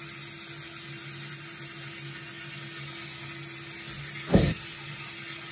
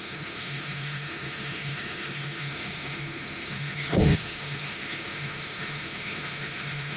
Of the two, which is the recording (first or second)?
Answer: first